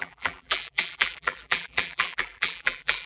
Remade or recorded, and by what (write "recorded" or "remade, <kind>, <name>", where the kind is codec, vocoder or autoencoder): remade, vocoder, BigVGAN v2